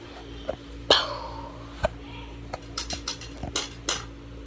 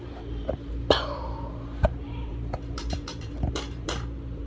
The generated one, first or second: second